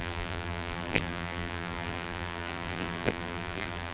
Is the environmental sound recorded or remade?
remade